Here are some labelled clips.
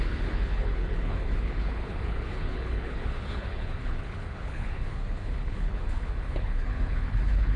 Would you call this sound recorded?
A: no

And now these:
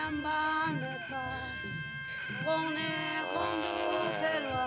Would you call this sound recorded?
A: yes